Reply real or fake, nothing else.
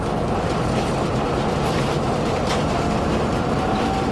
fake